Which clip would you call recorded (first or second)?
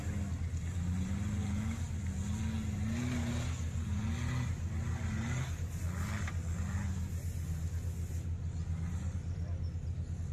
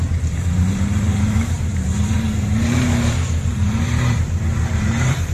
first